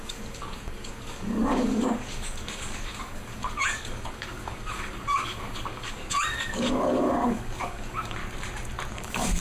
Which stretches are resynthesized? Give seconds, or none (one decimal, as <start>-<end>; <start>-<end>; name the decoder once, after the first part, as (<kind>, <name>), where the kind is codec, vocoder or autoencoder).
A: 0.0-8.2 (codec, DAC); 8.9-9.4